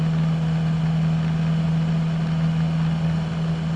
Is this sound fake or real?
real